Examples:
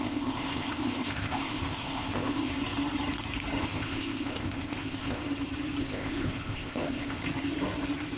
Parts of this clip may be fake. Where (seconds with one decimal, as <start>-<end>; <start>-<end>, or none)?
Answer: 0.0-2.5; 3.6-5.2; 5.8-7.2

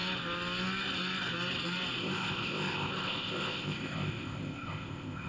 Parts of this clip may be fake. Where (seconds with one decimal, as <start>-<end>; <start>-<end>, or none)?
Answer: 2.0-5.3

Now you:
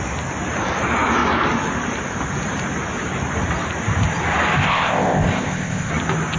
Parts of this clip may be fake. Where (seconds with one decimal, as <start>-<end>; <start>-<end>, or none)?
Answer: 4.6-5.9

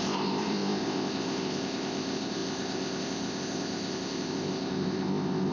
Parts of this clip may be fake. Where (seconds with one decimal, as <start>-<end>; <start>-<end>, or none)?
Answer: 0.0-5.5